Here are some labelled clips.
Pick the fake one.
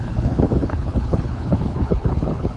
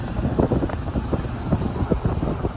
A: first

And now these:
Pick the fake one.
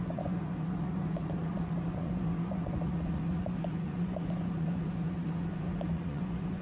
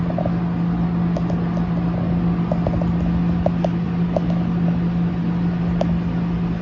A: first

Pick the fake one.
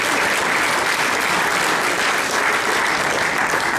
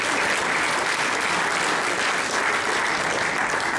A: first